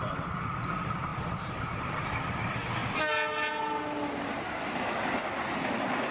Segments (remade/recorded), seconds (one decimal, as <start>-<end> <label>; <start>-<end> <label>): 0.0-2.8 remade; 2.8-5.6 recorded; 5.6-6.1 remade